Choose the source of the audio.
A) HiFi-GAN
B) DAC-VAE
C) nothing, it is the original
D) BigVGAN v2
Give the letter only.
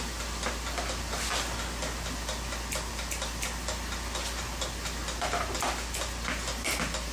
C